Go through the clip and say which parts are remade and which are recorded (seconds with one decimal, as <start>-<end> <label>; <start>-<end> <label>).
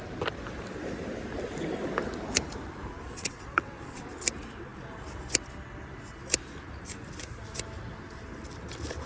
0.0-3.0 recorded; 3.0-4.0 remade; 4.0-9.1 recorded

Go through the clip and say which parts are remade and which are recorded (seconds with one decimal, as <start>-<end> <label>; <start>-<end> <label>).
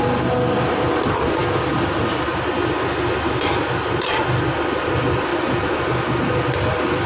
0.0-7.1 recorded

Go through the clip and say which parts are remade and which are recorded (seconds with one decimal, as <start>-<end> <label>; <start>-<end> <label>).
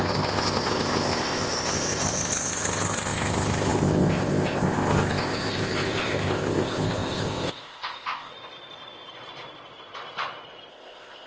0.0-8.3 remade; 8.3-10.7 recorded; 10.7-11.3 remade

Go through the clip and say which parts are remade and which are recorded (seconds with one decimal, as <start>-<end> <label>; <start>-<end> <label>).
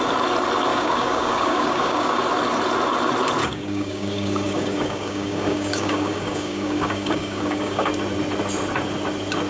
0.0-0.7 recorded; 0.7-2.2 remade; 2.2-3.4 recorded; 3.4-7.9 remade; 7.9-9.5 recorded